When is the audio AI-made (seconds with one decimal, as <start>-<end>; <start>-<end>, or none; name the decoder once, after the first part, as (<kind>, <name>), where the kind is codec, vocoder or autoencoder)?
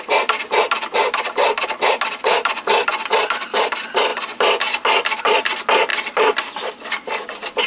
none